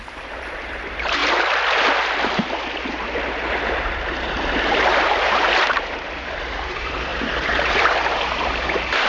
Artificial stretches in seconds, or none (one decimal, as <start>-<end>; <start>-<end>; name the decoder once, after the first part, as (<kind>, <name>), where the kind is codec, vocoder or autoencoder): 0.0-1.2 (vocoder, BigVGAN v2); 3.7-9.1